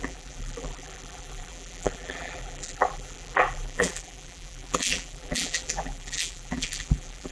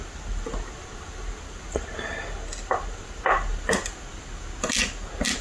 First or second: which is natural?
second